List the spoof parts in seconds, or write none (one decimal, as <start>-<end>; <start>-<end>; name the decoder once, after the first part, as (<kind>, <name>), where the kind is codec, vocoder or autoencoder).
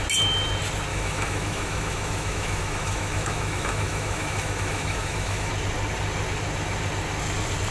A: 0.9-5.5 (autoencoder, DAC-VAE)